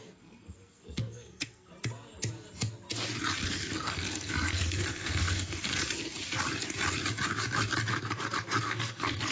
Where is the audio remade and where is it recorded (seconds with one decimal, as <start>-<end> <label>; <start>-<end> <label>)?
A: 0.0-1.7 remade; 1.7-3.4 recorded; 3.4-5.7 remade; 5.7-8.6 recorded; 8.6-9.3 remade